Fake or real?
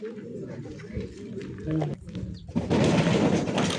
real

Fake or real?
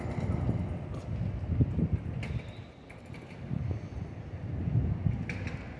real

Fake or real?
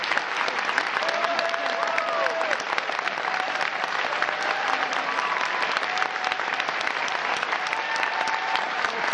fake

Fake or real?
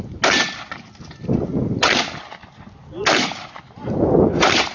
real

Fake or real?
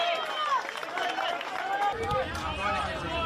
real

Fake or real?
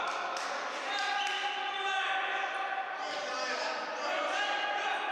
real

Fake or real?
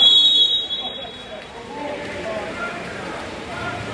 fake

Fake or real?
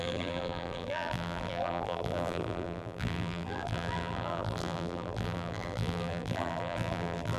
fake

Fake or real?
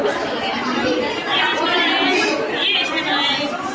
real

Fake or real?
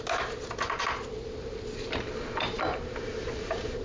real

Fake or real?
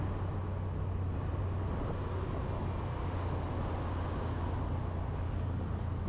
real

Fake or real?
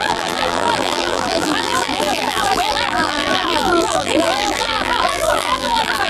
fake